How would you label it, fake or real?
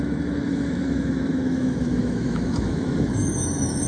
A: fake